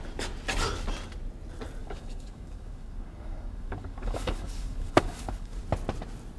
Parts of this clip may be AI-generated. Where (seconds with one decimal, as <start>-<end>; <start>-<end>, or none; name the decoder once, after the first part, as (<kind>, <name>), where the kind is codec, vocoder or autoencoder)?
1.8-5.6 (codec, DAC)